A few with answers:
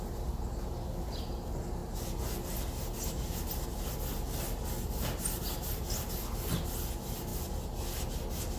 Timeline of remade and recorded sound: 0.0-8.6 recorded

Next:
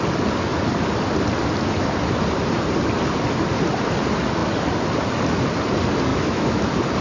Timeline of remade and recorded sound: 0.0-6.1 recorded; 6.1-6.6 remade; 6.6-7.0 recorded

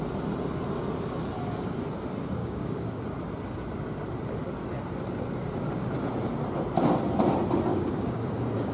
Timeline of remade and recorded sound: 0.0-2.4 recorded; 2.4-3.0 remade; 3.0-7.7 recorded; 7.7-8.7 remade

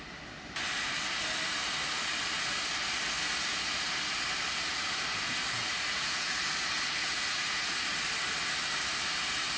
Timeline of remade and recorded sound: 0.0-5.6 recorded; 5.6-6.4 remade; 6.4-7.0 recorded; 7.0-7.9 remade; 7.9-9.6 recorded

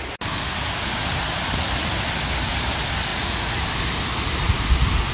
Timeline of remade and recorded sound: 0.0-3.1 recorded; 3.1-3.6 remade; 3.6-5.1 recorded

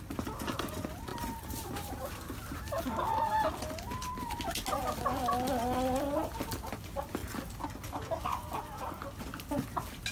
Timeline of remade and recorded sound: 0.0-1.1 recorded; 1.1-2.1 remade; 2.1-10.1 recorded

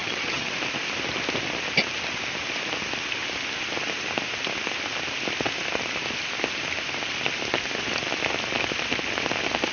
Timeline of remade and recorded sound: 0.0-0.5 remade; 0.5-9.7 recorded